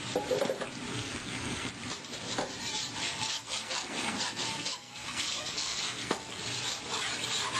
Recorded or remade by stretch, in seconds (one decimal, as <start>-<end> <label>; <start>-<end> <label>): 0.0-0.9 recorded; 0.9-1.7 remade; 1.7-3.0 recorded; 3.0-6.4 remade; 6.4-7.6 recorded